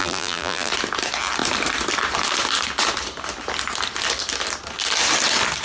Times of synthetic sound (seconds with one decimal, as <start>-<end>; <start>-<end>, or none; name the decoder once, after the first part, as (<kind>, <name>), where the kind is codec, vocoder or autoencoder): 0.0-0.7 (vocoder, BigVGAN v2)